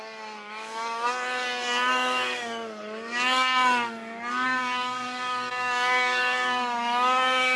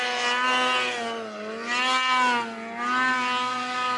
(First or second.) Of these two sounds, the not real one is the first